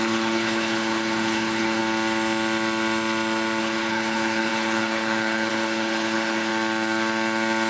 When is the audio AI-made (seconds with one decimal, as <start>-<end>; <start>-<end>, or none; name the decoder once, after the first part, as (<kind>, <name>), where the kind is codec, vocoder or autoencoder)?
0.0-1.8 (codec, HILCodec); 3.6-6.5